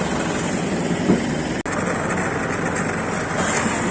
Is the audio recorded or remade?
recorded